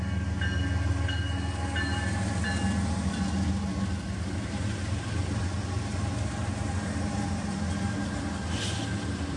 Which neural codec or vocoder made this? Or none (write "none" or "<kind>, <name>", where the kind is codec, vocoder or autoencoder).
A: none